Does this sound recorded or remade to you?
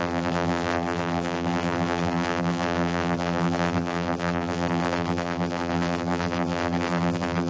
remade